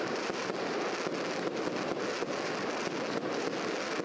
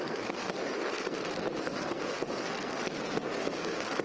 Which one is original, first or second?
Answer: first